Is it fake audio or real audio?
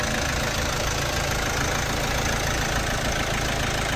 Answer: real